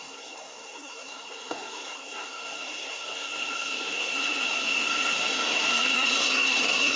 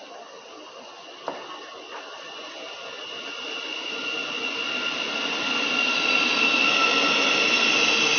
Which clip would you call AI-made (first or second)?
first